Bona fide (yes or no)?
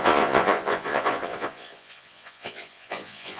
no